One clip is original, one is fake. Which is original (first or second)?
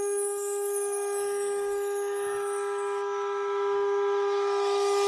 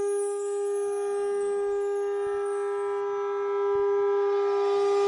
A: second